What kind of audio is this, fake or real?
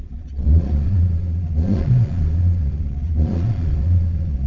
fake